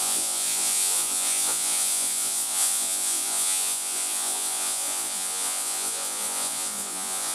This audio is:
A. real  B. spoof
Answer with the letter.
B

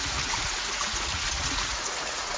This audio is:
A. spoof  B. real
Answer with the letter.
A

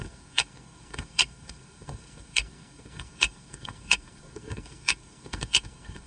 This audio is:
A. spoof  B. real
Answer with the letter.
A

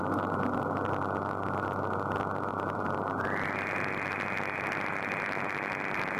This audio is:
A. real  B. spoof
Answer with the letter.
A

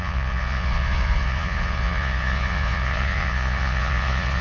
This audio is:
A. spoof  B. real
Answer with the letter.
A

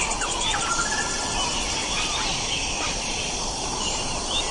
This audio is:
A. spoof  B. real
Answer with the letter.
B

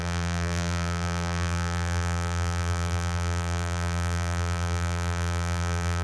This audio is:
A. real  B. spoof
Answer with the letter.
B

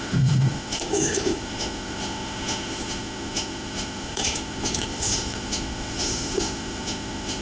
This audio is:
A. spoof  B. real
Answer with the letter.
A